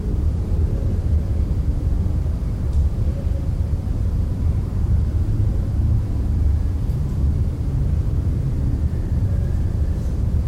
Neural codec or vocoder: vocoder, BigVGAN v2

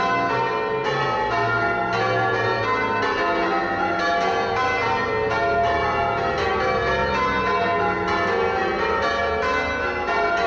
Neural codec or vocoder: none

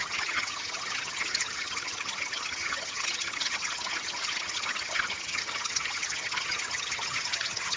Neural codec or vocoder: vocoder, HiFi-GAN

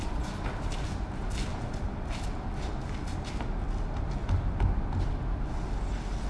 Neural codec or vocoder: none